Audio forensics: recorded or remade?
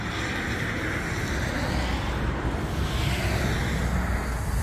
recorded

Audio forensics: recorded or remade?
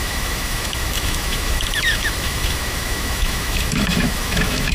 remade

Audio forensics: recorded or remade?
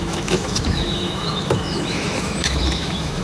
remade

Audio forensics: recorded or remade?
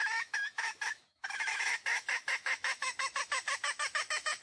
remade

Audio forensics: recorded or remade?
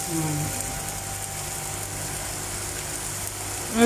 recorded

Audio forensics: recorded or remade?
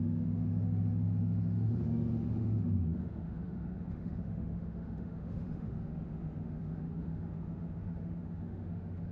remade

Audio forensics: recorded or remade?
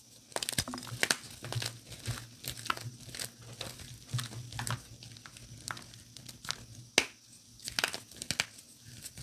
recorded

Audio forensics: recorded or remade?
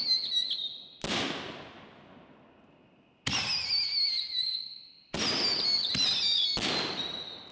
recorded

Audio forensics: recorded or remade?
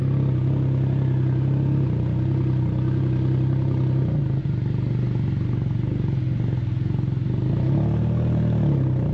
recorded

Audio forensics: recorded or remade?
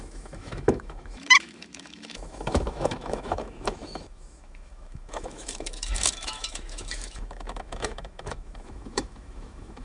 remade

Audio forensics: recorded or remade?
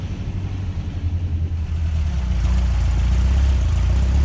recorded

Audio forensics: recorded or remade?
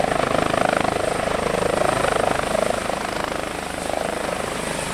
recorded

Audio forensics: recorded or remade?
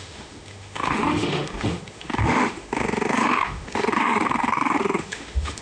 remade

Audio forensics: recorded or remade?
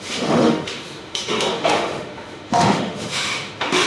remade